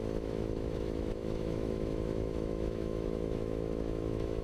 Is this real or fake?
fake